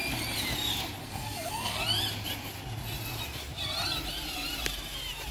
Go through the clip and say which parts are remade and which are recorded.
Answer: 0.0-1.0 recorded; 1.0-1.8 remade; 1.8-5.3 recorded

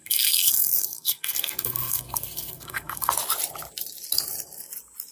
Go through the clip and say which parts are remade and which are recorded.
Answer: 0.0-3.1 remade; 3.1-5.1 recorded

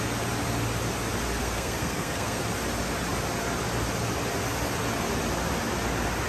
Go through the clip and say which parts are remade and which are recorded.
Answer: 0.0-1.4 recorded; 1.4-2.4 remade; 2.4-6.3 recorded